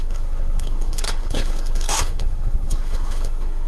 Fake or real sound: fake